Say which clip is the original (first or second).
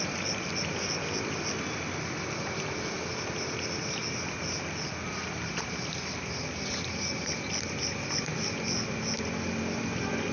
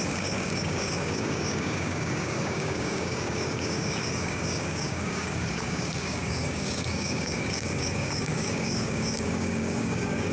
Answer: first